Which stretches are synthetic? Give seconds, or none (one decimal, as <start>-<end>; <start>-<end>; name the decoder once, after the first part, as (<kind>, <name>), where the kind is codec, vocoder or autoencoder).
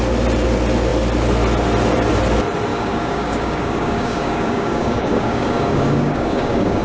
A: 2.7-6.8 (codec, DAC)